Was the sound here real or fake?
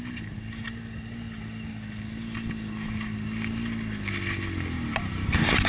real